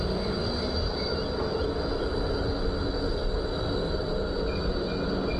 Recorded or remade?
recorded